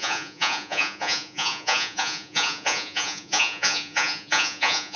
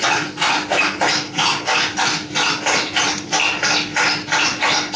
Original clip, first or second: second